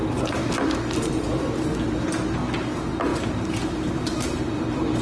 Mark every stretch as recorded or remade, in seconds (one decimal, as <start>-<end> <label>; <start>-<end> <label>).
0.0-0.4 remade; 0.4-2.6 recorded; 2.6-5.0 remade